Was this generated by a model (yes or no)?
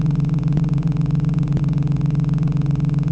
yes